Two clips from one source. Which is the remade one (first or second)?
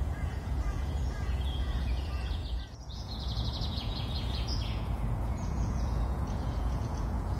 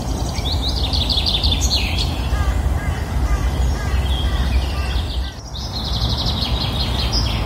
first